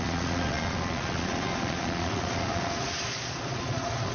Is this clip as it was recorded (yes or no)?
no